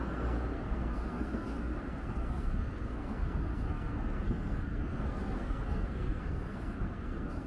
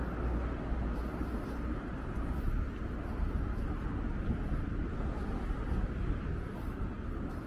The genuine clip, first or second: second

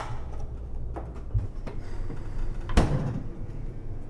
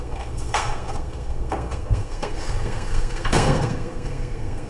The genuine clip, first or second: first